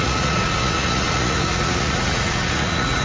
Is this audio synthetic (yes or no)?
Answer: yes